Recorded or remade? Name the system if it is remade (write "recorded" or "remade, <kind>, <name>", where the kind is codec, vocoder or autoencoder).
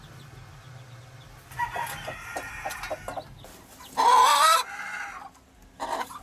recorded